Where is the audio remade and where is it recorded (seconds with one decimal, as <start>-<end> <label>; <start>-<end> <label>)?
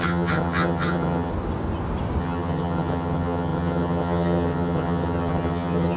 0.0-1.3 remade; 1.3-2.2 recorded; 2.2-6.0 remade